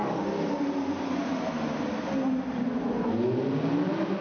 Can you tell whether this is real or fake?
real